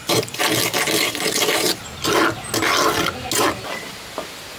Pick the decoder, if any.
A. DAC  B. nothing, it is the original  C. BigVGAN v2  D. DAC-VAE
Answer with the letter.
B